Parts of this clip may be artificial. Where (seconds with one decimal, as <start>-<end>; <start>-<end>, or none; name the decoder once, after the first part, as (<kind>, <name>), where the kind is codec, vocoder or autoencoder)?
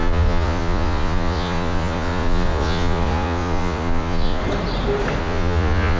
0.0-4.4 (vocoder, Vocos); 5.2-6.0